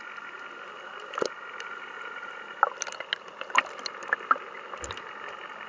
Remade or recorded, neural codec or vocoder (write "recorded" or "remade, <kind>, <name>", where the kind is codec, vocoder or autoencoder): recorded